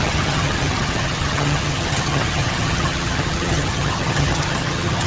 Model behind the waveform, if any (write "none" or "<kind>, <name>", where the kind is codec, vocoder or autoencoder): vocoder, HiFi-GAN